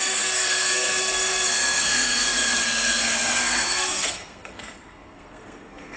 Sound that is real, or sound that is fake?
fake